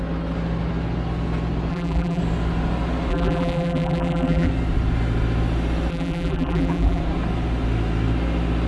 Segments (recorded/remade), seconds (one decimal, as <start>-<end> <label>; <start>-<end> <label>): 0.0-1.7 recorded; 1.7-2.2 remade; 2.2-3.1 recorded; 3.1-4.5 remade; 4.5-5.9 recorded; 5.9-7.0 remade; 7.0-8.7 recorded